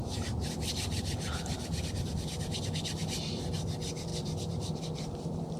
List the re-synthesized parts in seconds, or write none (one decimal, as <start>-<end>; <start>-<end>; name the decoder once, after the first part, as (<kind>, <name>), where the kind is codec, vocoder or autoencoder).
0.0-2.4 (vocoder, BigVGAN v2); 3.0-3.5; 4.1-4.8